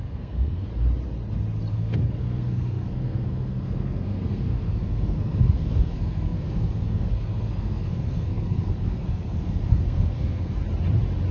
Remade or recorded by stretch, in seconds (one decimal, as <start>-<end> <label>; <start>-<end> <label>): 0.0-0.7 remade; 0.7-1.7 recorded; 1.7-10.6 remade; 10.6-11.3 recorded